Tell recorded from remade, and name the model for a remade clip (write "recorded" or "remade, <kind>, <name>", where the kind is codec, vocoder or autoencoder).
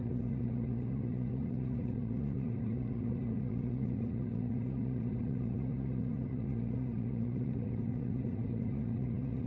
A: remade, vocoder, Vocos